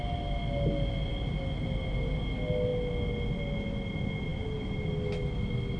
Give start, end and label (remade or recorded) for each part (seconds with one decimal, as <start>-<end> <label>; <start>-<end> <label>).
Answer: 0.0-5.8 recorded